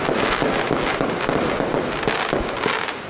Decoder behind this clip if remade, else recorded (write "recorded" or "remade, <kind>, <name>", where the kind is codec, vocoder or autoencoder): recorded